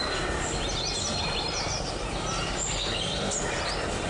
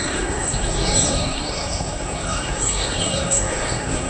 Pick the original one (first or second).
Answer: first